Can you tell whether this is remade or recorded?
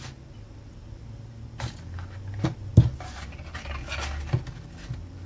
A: recorded